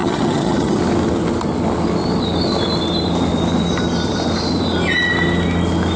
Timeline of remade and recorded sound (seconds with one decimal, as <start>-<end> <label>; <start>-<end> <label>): 0.0-0.8 remade; 0.8-6.0 recorded